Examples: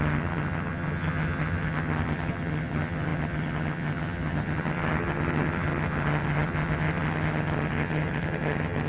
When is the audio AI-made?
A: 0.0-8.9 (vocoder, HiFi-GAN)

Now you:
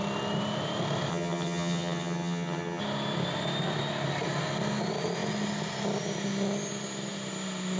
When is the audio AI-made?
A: 1.1-2.8 (vocoder, HiFi-GAN)

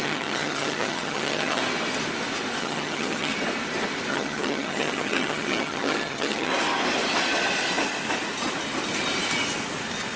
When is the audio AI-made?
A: 0.0-1.6 (vocoder, HiFi-GAN); 2.6-3.3; 4.1-6.5

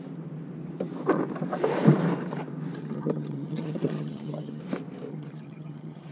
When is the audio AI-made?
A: 2.8-4.6 (vocoder, HiFi-GAN); 5.1-6.1